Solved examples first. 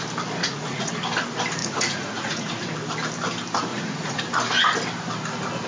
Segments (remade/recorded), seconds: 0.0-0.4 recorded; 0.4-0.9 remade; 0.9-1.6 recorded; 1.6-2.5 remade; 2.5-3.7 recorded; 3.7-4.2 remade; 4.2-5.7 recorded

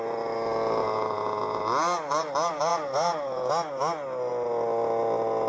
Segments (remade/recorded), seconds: 0.0-0.8 recorded; 0.8-1.6 remade; 1.6-2.7 recorded; 2.7-3.5 remade; 3.5-5.5 recorded

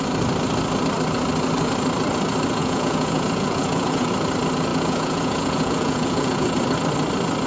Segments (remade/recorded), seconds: 0.0-2.6 recorded; 2.6-4.1 remade; 4.1-4.7 recorded; 4.7-6.5 remade; 6.5-7.5 recorded

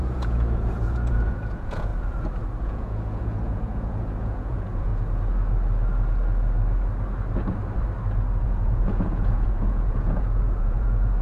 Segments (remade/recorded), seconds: 0.0-1.9 remade; 1.9-2.6 recorded; 2.6-4.9 remade; 4.9-8.4 recorded; 8.4-11.2 remade

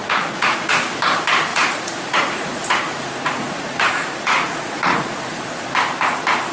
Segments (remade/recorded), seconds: 0.0-0.7 remade; 0.7-1.5 recorded; 1.5-5.4 remade; 5.4-6.5 recorded

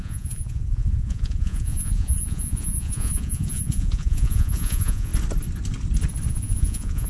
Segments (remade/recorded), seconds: 0.0-5.1 remade; 5.1-6.3 recorded; 6.3-7.1 remade

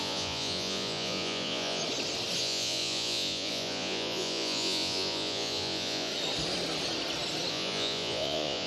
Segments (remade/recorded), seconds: 0.0-1.8 remade; 1.8-2.4 recorded; 2.4-6.1 remade; 6.1-7.5 recorded; 7.5-8.7 remade

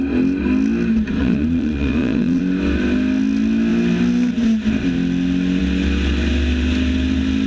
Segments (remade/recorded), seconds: 0.0-1.2 recorded; 1.2-2.4 remade; 2.4-7.5 recorded